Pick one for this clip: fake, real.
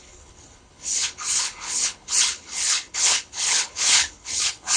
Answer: fake